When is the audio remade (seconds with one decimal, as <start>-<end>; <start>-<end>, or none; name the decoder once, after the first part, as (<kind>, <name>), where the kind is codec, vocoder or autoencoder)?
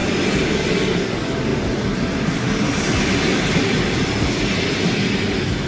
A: none